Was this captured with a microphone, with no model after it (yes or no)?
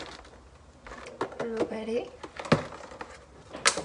yes